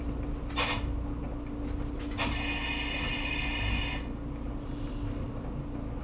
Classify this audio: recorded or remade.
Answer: recorded